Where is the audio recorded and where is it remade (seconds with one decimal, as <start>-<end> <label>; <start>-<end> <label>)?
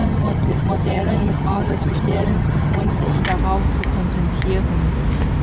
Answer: 0.0-3.2 remade; 3.2-5.4 recorded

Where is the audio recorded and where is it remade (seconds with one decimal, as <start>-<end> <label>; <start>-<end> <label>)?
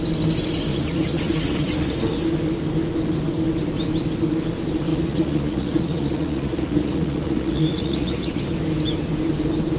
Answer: 0.0-0.7 recorded; 0.7-1.9 remade; 1.9-4.9 recorded; 4.9-8.4 remade; 8.4-9.8 recorded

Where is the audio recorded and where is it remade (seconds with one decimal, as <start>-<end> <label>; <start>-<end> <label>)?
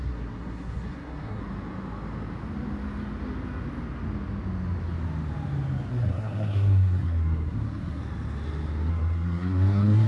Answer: 0.0-1.4 remade; 1.4-5.9 recorded; 5.9-8.0 remade; 8.0-8.9 recorded; 8.9-10.1 remade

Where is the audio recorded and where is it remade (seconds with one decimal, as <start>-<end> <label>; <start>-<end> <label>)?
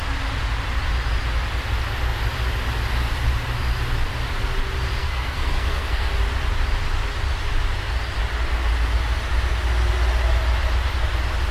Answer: 0.0-5.0 recorded; 5.0-6.1 remade; 6.1-11.5 recorded